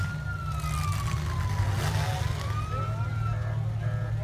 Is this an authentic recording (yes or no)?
yes